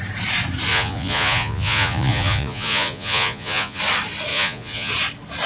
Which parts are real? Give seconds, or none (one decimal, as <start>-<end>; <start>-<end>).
0.0-0.7; 3.8-4.3; 4.9-5.5